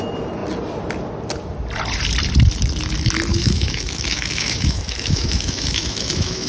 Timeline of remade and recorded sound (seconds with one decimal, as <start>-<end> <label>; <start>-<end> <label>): 0.0-3.3 recorded; 3.3-6.5 remade